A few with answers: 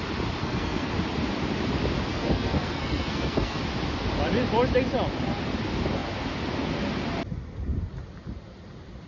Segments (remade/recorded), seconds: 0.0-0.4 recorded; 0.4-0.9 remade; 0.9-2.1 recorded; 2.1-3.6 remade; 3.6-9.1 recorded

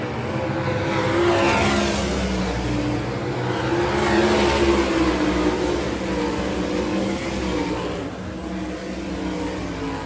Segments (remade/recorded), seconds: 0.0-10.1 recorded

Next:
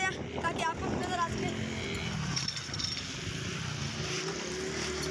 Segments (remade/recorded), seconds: 0.0-5.1 recorded